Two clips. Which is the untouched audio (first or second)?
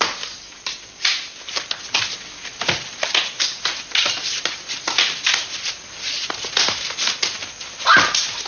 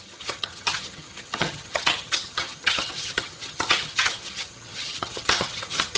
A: first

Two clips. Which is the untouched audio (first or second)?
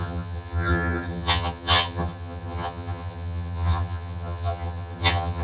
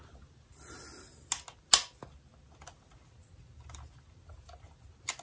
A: second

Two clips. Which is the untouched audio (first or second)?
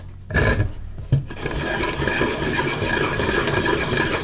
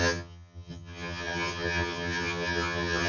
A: first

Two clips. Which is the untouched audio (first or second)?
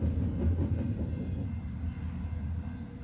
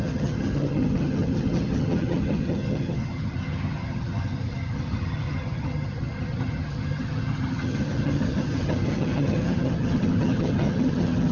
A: first